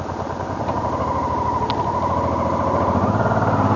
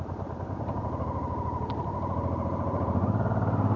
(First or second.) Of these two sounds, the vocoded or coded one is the second